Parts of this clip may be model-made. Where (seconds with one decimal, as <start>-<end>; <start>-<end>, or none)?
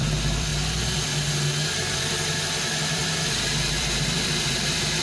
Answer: 0.0-0.5; 1.9-3.0; 3.7-5.0